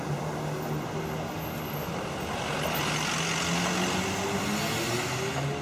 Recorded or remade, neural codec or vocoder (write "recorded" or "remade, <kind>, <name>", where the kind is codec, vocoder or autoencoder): recorded